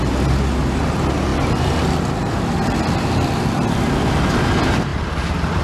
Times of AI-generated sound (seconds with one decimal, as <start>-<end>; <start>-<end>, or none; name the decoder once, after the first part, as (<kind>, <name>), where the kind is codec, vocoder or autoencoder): none